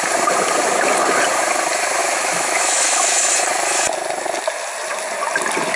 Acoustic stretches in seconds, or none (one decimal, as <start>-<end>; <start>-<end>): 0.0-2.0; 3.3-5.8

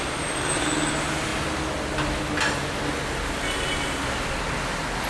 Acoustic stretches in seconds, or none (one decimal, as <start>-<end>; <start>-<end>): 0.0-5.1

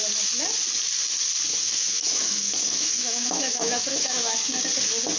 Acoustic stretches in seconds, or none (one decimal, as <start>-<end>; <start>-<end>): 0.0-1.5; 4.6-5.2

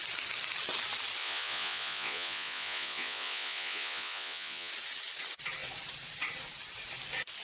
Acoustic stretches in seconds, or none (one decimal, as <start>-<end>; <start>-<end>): 0.0-1.2; 4.7-7.4